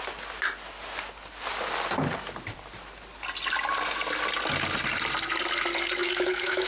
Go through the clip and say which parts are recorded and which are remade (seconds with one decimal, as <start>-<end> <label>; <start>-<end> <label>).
0.0-6.0 recorded; 6.0-6.7 remade